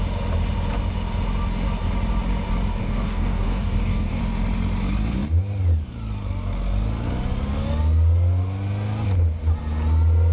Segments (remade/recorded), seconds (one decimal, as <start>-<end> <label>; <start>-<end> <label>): 0.0-2.8 recorded; 2.8-4.2 remade; 4.2-10.3 recorded